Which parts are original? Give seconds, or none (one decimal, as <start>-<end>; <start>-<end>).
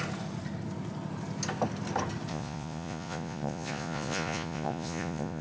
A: 0.0-2.3